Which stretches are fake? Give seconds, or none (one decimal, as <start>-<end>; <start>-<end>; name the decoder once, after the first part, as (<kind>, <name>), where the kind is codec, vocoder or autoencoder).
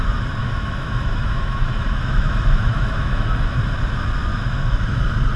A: 0.4-3.6 (autoencoder, DAC-VAE); 4.3-5.0